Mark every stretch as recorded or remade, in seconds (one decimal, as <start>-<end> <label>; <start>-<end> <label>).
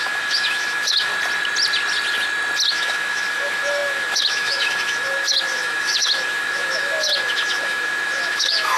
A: 0.0-1.1 remade; 1.1-2.7 recorded; 2.7-8.8 remade